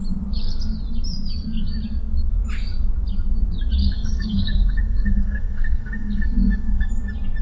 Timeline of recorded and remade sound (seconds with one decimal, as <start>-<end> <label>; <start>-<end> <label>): 0.0-3.8 recorded; 3.8-6.9 remade; 6.9-7.4 recorded